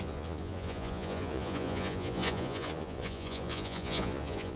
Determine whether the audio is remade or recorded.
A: remade